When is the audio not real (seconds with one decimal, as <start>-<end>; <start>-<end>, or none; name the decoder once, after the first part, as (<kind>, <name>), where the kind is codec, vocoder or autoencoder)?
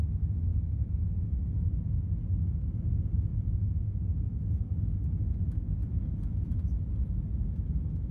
0.5-1.3 (vocoder, Vocos); 3.3-4.7; 5.8-6.9